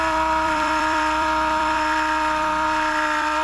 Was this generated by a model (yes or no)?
yes